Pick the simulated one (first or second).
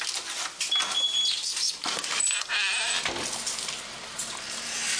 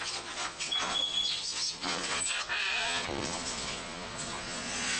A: second